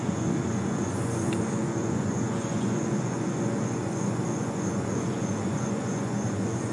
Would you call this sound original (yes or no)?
no